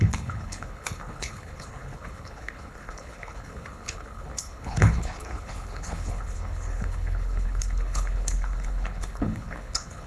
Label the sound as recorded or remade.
remade